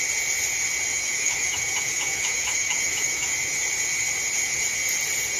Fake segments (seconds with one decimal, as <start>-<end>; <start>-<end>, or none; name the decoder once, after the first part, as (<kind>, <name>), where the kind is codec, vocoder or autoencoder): 0.9-3.3 (autoencoder, DAC-VAE)